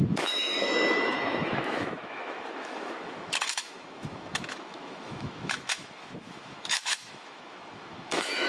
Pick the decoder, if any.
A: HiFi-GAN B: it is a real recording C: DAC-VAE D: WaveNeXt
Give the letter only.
C